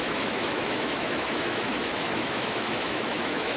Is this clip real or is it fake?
fake